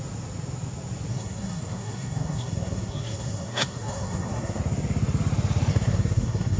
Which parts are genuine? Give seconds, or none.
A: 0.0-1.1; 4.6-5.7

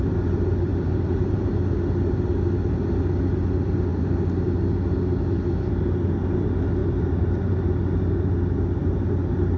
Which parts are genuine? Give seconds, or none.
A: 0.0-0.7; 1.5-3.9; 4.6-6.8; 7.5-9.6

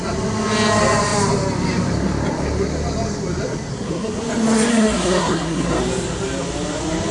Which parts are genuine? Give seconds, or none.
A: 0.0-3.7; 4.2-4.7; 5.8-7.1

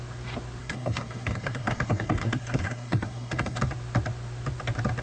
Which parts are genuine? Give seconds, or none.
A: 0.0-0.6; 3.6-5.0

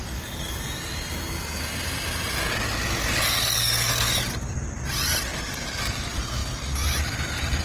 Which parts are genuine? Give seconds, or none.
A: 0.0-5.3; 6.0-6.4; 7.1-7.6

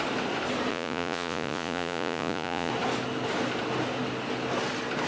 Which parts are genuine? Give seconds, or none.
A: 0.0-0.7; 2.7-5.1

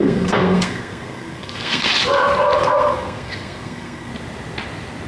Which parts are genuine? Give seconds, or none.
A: 1.9-2.6; 4.1-5.1

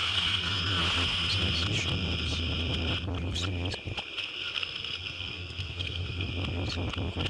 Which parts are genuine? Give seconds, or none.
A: 0.6-4.2; 6.3-7.3